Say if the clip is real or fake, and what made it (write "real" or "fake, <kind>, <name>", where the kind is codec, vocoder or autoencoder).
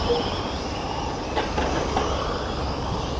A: real